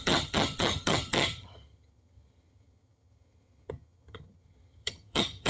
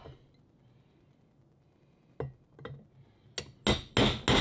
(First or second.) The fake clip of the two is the first